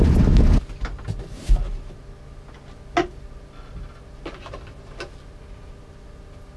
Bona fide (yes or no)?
yes